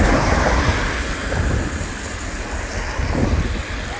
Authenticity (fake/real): real